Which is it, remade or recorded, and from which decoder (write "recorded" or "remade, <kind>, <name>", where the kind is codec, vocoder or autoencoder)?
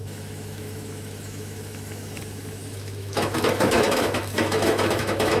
remade, autoencoder, DAC-VAE